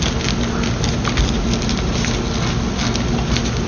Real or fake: real